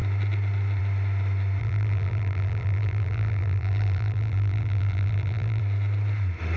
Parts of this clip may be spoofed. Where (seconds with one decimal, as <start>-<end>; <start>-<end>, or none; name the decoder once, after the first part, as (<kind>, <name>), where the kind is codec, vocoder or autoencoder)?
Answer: 1.6-5.6 (vocoder, BigVGAN v2)